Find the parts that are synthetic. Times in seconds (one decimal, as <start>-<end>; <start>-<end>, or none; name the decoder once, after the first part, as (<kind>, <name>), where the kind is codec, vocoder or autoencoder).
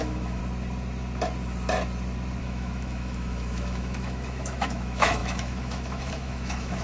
0.0-0.4 (autoencoder, DAC-VAE); 2.4-6.8